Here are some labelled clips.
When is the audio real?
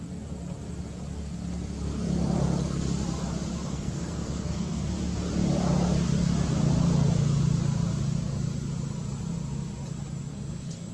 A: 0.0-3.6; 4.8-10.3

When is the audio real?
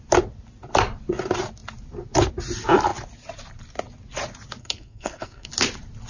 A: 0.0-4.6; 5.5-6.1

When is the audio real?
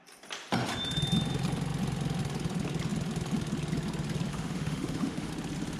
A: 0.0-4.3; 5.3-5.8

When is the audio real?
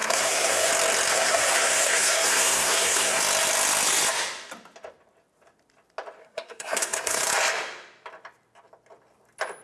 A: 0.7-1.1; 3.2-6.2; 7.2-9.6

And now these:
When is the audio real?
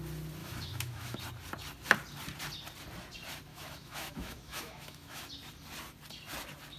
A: 0.0-0.4; 1.2-3.5; 5.2-6.8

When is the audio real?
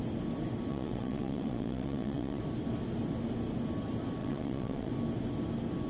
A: 0.0-0.7; 2.4-4.2; 4.9-5.9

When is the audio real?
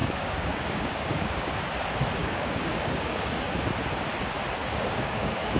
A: 1.5-2.2; 3.6-4.6